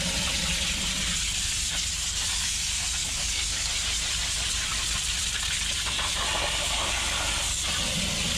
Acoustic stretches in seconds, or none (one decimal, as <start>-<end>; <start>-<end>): 0.0-3.0; 3.7-8.4